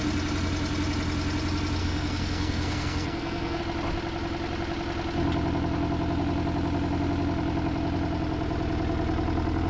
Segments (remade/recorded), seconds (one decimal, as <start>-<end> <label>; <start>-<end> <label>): 0.0-1.8 recorded; 1.8-3.6 remade; 3.6-9.7 recorded